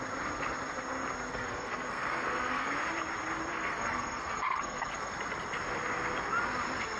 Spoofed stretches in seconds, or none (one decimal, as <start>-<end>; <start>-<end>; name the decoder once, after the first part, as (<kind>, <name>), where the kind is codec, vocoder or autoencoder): 1.3-2.7 (codec, SNAC); 3.5-5.1